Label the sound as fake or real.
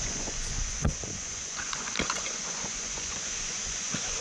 fake